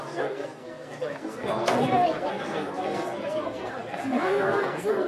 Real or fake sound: fake